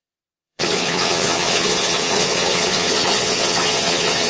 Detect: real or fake fake